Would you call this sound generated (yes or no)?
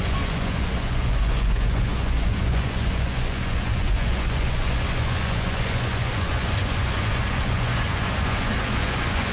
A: yes